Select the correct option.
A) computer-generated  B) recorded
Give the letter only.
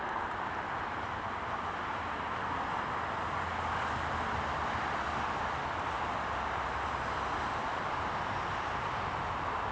B